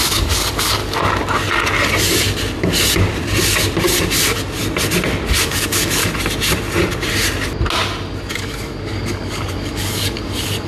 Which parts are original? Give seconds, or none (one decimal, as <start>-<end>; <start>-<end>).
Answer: 0.8-5.3; 6.0-8.3